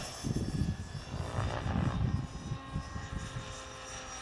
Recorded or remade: recorded